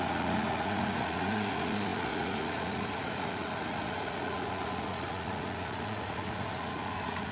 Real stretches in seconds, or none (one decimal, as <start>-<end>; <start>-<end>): none